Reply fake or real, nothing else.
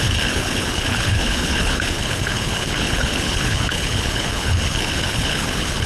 fake